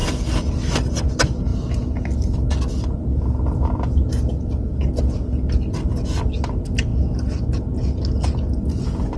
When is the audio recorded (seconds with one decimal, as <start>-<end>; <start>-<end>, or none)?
0.0-9.2